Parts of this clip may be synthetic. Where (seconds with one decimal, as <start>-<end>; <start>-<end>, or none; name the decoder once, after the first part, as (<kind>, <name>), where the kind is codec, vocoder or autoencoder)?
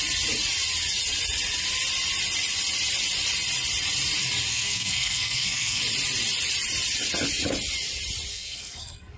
4.5-5.8 (codec, SNAC); 8.3-9.2